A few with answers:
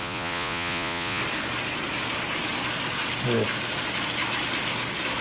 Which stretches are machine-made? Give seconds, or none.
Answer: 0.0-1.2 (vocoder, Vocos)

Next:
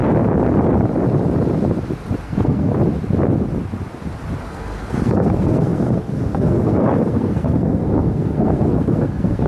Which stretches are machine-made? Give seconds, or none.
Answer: 2.2-2.7 (codec, SNAC); 4.4-9.5

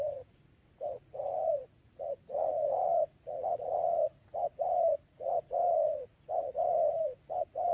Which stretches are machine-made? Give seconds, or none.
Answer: 0.0-7.7 (vocoder, Vocos)

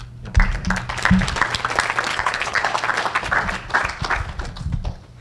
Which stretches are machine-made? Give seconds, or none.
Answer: 2.1-2.7 (codec, HILCodec)

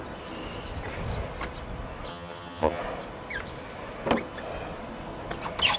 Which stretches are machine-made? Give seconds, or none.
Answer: 2.1-2.8 (vocoder, HiFi-GAN)

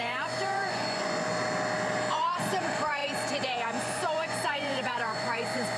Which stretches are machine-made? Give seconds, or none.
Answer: 0.0-1.3 (vocoder, Vocos); 2.1-5.8

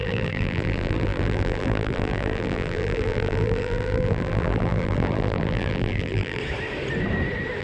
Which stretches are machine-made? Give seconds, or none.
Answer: 0.0-6.4 (vocoder, BigVGAN v2)